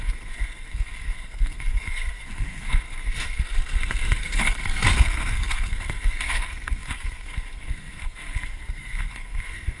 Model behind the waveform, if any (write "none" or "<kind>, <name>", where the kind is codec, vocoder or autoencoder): codec, SNAC